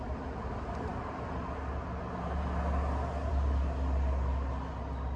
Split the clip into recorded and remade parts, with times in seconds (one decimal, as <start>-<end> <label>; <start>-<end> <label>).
0.0-5.2 recorded